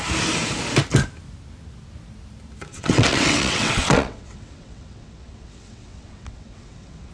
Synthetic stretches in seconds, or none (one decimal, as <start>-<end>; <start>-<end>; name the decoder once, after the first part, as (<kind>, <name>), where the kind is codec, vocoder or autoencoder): 2.7-7.1 (vocoder, WaveNeXt)